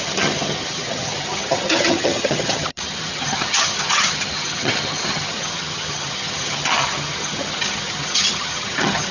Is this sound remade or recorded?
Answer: remade